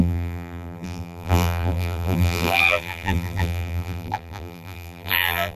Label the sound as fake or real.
fake